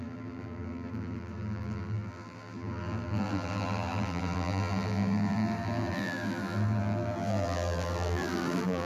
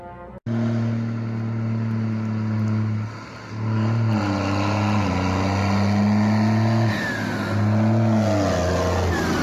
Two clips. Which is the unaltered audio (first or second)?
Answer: second